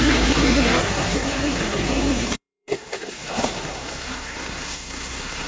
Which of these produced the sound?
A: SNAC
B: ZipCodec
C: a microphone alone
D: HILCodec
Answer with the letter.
A